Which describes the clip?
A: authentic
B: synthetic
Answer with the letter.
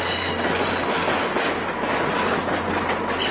A